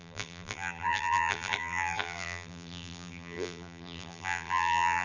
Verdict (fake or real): fake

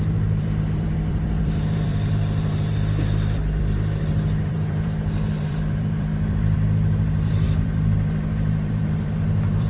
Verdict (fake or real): fake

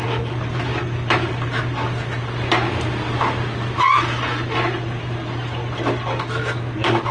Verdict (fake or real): real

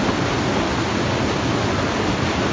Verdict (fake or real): real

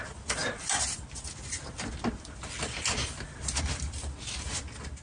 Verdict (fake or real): real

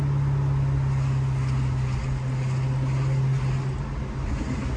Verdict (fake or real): real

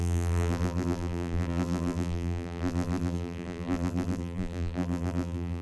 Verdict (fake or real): fake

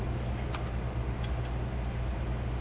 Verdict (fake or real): real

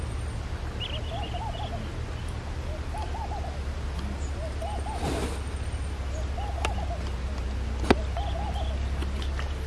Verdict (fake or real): real